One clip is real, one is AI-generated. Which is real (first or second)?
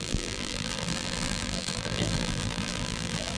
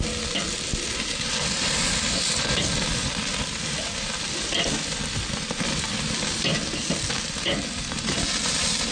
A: second